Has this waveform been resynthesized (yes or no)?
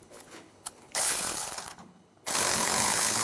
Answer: yes